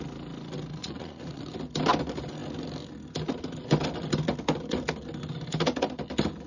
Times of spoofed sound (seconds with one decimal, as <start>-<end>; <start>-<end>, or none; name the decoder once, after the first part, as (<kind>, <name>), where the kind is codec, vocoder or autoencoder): 0.8-1.4 (vocoder, Vocos)